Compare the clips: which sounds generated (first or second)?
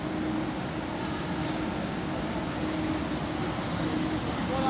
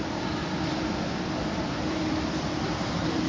second